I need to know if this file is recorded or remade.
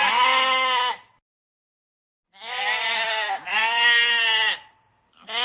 recorded